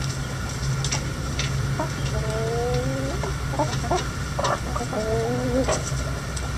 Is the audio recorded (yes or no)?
yes